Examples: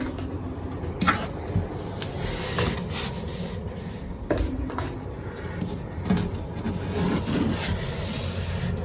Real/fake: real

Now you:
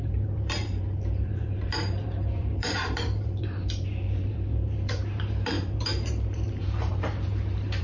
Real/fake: fake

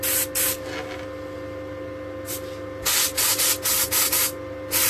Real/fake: real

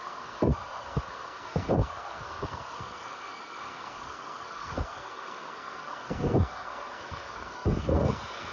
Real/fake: fake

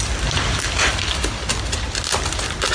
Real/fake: real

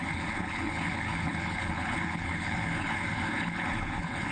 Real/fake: fake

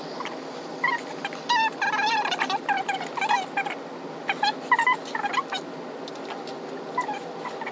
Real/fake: real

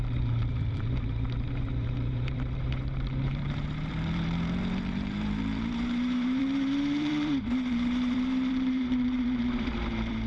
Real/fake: fake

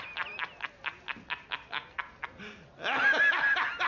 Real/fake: real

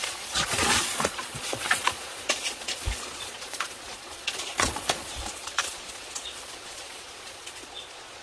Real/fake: fake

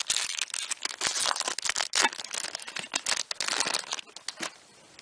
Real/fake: real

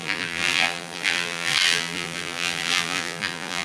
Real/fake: fake